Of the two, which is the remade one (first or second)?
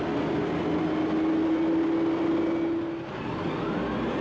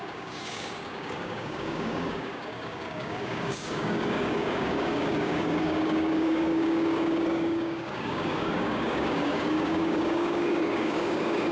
second